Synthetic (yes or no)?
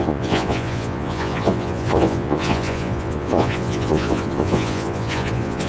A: yes